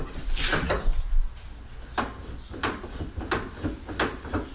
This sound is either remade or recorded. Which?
recorded